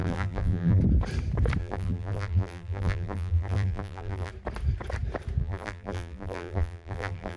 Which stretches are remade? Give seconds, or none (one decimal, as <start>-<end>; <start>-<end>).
0.0-0.8; 1.6-4.3; 5.4-7.4